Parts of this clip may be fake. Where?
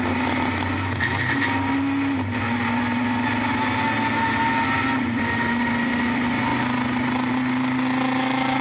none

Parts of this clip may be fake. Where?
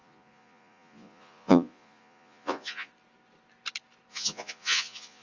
0.0-2.9; 4.1-5.2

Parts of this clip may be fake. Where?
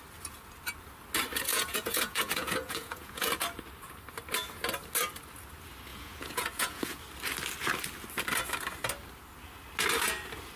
1.5-3.3; 5.9-7.0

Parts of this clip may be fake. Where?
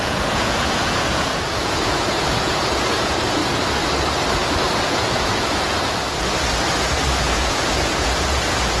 0.0-3.4; 4.9-6.0; 7.2-8.8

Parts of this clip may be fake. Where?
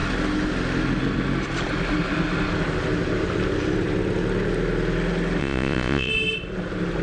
5.4-6.1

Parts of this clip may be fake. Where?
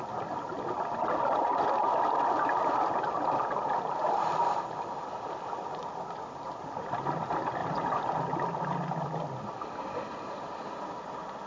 none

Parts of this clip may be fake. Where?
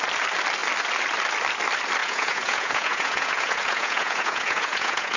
2.0-5.2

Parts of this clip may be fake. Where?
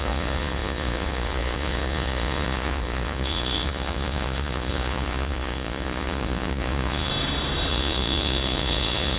0.0-7.1; 7.7-9.2